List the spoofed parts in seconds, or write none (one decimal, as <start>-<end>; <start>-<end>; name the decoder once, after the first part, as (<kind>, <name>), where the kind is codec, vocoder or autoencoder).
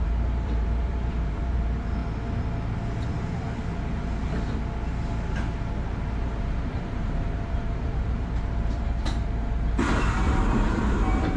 0.0-2.0 (vocoder, BigVGAN v2); 6.4-11.4